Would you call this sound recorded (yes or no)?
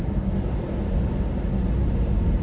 yes